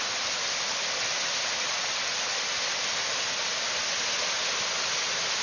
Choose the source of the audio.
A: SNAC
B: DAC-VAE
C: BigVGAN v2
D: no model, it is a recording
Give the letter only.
D